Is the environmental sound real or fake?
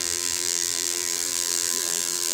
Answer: fake